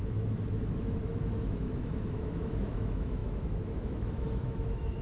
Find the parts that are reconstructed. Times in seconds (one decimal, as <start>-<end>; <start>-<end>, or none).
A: 0.0-5.0